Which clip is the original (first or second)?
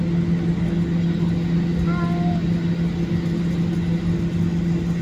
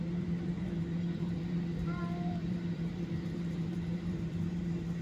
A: first